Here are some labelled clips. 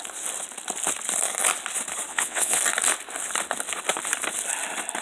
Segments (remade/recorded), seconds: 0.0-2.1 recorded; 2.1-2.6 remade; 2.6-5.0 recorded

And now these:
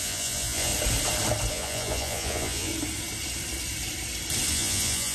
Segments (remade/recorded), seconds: 0.0-0.7 remade; 0.7-1.5 recorded; 1.5-2.7 remade; 2.7-4.5 recorded; 4.5-5.1 remade

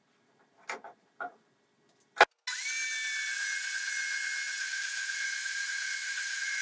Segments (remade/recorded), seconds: 0.0-4.6 recorded; 4.6-6.6 remade